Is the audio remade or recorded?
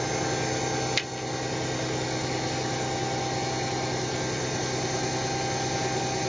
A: recorded